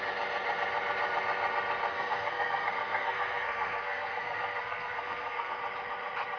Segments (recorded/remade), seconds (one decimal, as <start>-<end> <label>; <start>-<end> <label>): 0.0-1.9 recorded; 1.9-5.6 remade; 5.6-6.4 recorded